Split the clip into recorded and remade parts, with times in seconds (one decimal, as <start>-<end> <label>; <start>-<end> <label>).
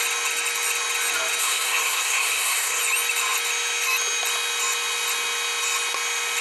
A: 0.0-1.4 recorded; 1.4-2.8 remade; 2.8-6.4 recorded